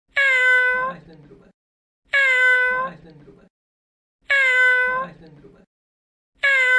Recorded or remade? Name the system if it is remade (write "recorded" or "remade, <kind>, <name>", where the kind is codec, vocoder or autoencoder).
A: recorded